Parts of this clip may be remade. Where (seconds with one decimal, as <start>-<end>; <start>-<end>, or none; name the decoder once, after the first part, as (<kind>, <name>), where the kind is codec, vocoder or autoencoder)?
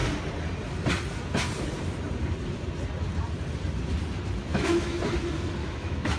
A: 4.5-5.0 (autoencoder, DAC-VAE); 5.6-6.2